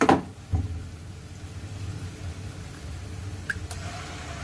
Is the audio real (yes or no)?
yes